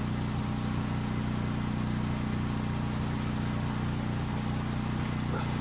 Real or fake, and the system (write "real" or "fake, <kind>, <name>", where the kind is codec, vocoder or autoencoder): real